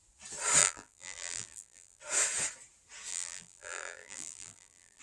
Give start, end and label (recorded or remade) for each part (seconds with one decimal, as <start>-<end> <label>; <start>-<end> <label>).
0.0-0.6 recorded; 0.6-2.0 remade; 2.0-3.1 recorded; 3.1-5.0 remade